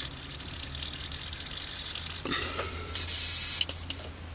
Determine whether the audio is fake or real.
real